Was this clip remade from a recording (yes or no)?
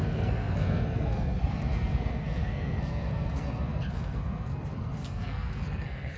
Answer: yes